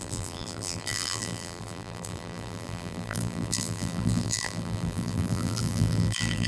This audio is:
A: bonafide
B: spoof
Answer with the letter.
B